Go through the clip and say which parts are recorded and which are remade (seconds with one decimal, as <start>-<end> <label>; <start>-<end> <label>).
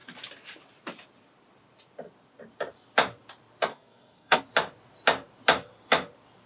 0.0-3.7 recorded; 3.7-4.4 remade; 4.4-6.5 recorded